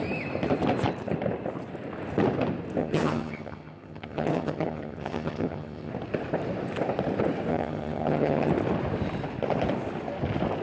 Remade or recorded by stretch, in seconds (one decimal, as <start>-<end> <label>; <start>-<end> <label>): 0.0-2.8 recorded; 2.8-5.9 remade; 5.9-7.5 recorded; 7.5-8.5 remade; 8.5-10.6 recorded